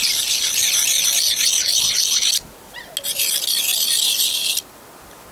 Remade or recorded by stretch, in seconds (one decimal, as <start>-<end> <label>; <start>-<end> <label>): 0.0-5.3 recorded